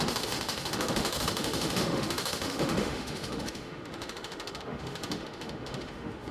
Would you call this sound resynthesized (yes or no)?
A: yes